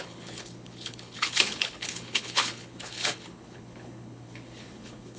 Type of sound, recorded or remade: remade